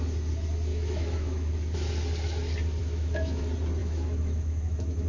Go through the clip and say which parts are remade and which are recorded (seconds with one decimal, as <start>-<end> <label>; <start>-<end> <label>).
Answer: 0.0-0.7 recorded; 0.7-1.5 remade; 1.5-2.8 recorded; 2.8-3.4 remade; 3.4-3.8 recorded; 3.8-5.1 remade